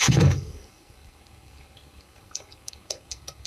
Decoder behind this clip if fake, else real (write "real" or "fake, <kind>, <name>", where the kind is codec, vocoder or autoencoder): fake, codec, SNAC